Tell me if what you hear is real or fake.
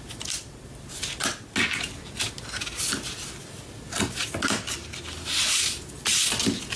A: real